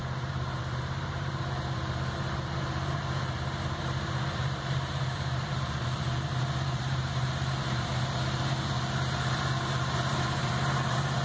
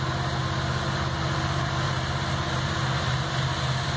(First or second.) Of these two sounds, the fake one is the first